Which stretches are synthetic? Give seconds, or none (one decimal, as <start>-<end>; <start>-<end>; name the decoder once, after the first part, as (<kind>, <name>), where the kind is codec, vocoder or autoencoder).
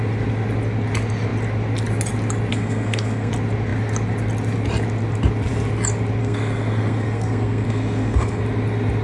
2.5-3.3 (codec, SNAC); 6.2-8.4